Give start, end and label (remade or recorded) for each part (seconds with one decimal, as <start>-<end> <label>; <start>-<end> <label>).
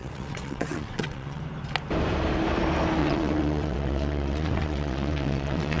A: 0.0-1.4 remade; 1.4-3.0 recorded; 3.0-5.8 remade